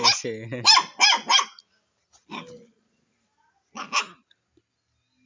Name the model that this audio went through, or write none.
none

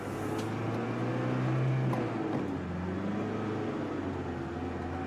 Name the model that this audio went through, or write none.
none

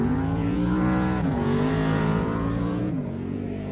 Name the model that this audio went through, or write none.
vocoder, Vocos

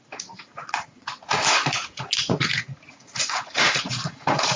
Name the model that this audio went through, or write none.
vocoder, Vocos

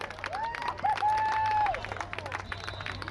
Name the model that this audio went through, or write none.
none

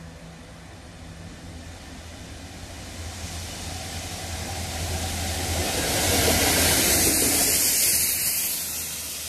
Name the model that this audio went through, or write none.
none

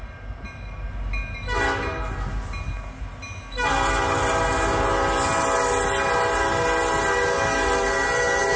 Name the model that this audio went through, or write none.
none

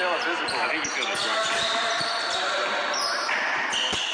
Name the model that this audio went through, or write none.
none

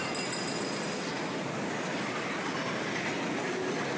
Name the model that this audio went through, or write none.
none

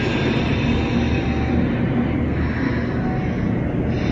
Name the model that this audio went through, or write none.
none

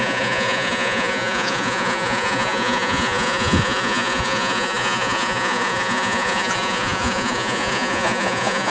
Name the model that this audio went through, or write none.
vocoder, Vocos